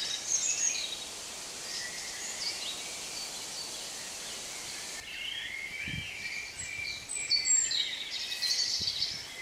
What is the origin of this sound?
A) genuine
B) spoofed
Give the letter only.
A